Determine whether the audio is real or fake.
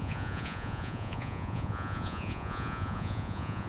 fake